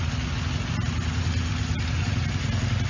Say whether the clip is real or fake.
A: real